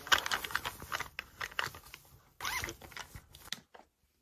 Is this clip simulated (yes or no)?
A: no